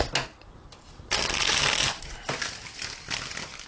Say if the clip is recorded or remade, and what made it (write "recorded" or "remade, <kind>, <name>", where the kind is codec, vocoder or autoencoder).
recorded